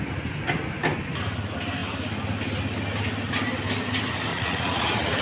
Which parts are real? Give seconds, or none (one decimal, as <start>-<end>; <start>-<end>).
0.0-4.3